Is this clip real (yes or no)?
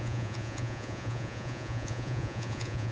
no